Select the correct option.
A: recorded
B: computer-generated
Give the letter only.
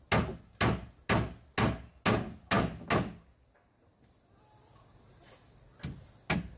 A